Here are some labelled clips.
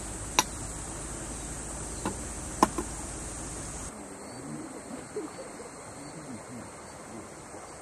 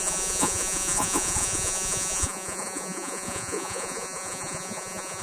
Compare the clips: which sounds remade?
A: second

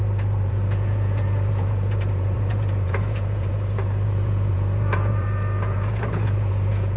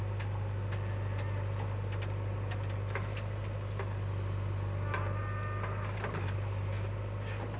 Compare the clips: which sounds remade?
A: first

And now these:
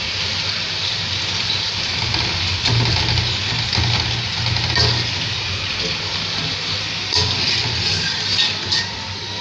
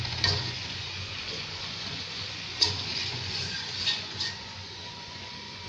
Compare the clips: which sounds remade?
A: second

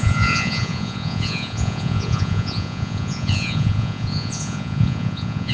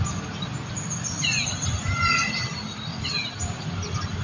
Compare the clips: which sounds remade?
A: first